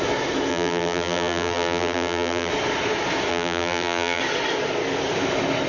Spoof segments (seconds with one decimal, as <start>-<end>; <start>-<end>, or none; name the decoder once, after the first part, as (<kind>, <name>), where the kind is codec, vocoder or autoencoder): 0.5-2.5 (vocoder, BigVGAN v2); 3.3-4.2